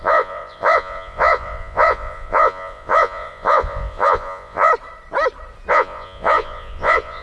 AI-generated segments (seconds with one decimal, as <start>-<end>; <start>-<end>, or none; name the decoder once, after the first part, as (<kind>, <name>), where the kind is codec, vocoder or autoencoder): 0.0-4.7 (vocoder, Vocos); 5.7-7.2

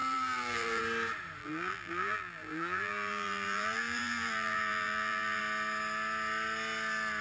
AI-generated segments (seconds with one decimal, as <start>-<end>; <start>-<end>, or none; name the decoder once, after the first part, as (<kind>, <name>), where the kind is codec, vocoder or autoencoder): 0.0-0.8 (vocoder, BigVGAN v2); 1.4-5.4

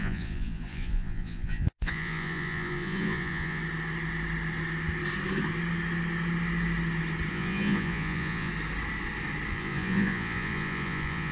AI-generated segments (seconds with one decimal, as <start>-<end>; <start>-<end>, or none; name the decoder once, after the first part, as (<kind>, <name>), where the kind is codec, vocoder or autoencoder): 0.0-3.6 (vocoder, Vocos); 7.3-8.5; 9.5-11.3